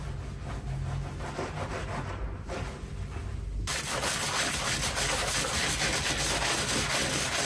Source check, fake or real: real